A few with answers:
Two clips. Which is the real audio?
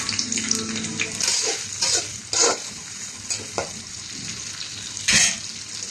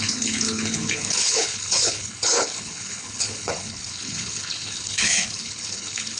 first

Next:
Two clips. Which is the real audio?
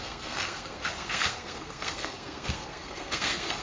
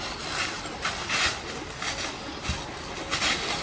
second